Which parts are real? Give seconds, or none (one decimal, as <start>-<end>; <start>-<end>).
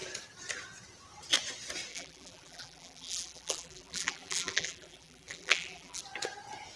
0.0-1.9; 6.0-6.8